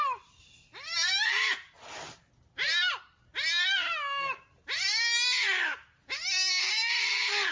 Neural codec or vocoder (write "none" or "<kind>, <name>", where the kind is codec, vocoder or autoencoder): none